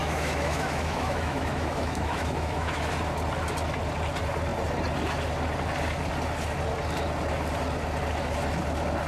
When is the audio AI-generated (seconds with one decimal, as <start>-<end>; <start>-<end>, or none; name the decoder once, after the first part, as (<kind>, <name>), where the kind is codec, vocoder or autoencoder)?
0.0-2.9 (autoencoder, DAC-VAE)

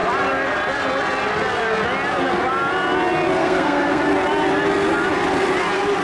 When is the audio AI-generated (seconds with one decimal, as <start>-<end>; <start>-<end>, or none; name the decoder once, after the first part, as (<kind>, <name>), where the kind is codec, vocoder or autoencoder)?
3.4-4.0 (codec, SNAC)